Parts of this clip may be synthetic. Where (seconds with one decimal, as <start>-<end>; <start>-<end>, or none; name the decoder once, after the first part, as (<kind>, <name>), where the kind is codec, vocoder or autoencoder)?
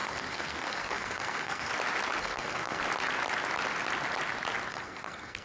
0.0-1.7 (codec, SNAC); 2.2-2.8; 4.7-5.4